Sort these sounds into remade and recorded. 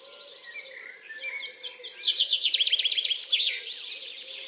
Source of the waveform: remade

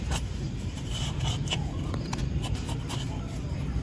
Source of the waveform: remade